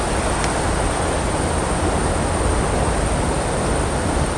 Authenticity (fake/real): real